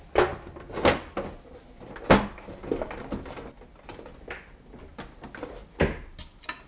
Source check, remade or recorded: recorded